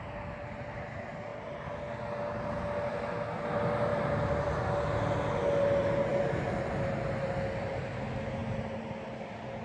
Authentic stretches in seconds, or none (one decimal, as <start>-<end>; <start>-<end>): 0.0-3.9; 4.7-8.4